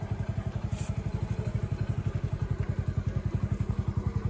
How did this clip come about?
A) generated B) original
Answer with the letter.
B